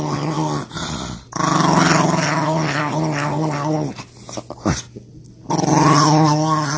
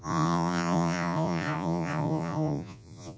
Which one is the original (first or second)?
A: first